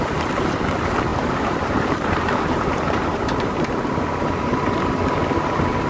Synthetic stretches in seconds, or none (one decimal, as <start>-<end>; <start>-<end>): 1.1-3.7